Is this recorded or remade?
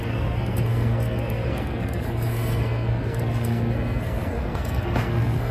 remade